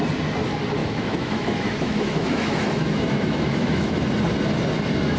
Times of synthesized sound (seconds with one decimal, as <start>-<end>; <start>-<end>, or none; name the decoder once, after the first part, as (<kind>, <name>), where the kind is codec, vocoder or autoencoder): 0.8-3.9 (autoencoder, DAC-VAE)